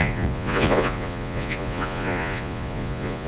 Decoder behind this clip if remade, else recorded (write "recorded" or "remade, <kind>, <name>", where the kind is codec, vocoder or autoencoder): remade, vocoder, Vocos